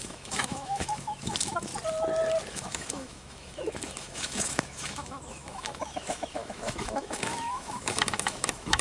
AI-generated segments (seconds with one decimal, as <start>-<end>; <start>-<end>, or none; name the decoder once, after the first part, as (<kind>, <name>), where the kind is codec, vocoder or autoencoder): 0.0-1.7 (autoencoder, DAC-VAE); 2.5-8.8